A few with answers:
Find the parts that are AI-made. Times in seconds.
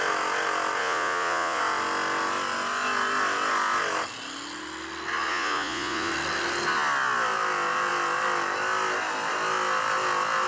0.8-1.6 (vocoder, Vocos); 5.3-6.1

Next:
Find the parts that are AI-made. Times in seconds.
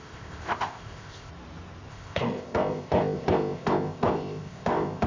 0.0-1.3 (codec, ZipCodec); 1.9-5.1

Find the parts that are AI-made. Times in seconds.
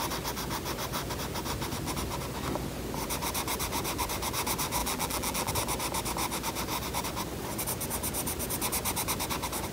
4.8-5.5 (vocoder, BigVGAN v2)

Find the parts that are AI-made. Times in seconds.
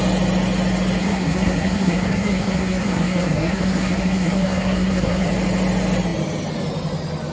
1.0-5.3 (codec, SNAC)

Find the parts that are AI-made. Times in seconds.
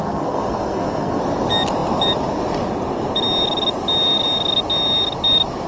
0.0-1.2 (codec, SNAC)